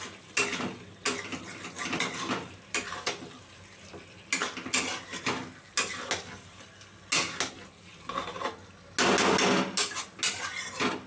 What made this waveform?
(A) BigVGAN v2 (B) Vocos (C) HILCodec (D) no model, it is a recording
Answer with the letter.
D